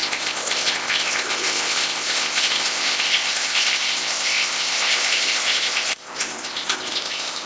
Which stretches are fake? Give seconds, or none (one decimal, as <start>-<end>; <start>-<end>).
0.0-7.5